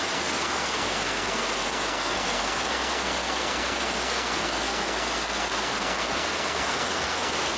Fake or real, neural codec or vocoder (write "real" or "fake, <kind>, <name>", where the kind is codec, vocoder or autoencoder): fake, codec, SNAC